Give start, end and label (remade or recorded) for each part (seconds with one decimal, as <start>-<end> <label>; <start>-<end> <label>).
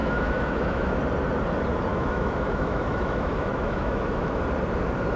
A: 0.0-1.0 remade; 1.0-1.9 recorded; 1.9-4.4 remade; 4.4-5.2 recorded